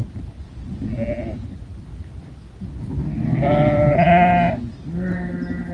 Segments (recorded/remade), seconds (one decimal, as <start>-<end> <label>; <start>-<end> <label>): 0.0-5.7 recorded